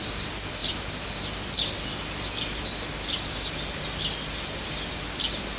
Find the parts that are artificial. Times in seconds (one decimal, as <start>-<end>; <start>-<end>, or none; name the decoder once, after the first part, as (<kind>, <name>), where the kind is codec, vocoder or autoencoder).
none